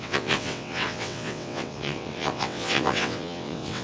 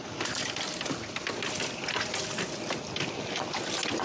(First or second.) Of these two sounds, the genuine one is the second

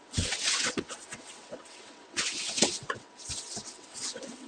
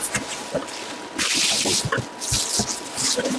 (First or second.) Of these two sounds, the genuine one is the second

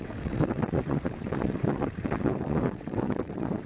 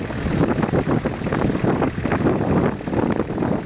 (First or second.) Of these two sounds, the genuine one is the second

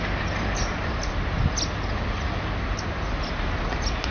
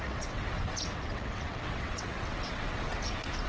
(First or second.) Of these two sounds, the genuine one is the first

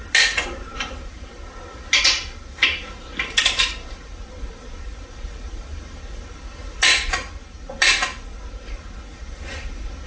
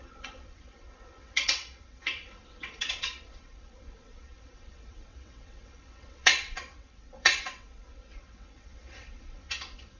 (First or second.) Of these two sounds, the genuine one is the first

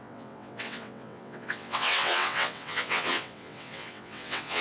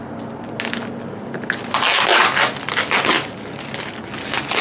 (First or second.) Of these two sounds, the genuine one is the second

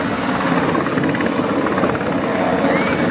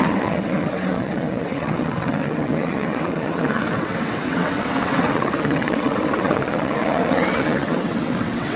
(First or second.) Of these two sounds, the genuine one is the first